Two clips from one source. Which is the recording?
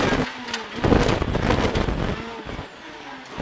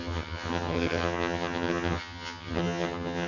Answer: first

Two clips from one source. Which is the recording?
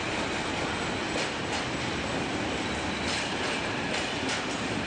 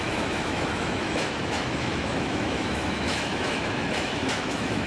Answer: first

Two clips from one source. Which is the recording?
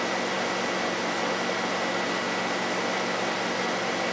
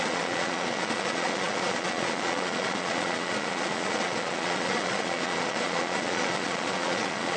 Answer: first